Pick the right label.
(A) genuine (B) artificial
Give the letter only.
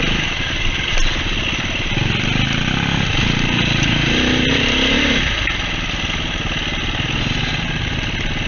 A